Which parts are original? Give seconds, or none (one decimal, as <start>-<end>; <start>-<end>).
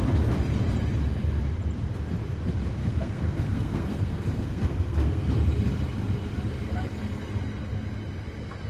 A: 0.0-2.8; 5.3-8.7